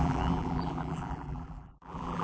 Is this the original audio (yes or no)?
no